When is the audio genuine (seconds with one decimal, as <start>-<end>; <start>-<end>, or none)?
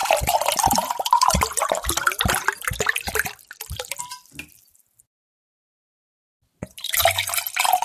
0.0-7.8